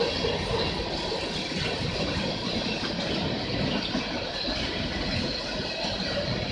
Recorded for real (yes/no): yes